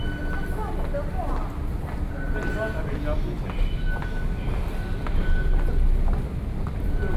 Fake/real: real